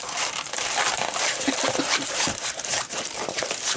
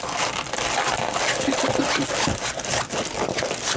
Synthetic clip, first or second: first